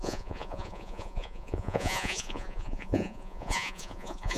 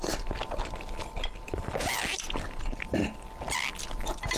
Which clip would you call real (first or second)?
second